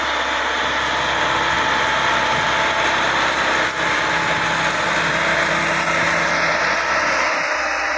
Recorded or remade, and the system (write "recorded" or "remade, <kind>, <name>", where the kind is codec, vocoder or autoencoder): recorded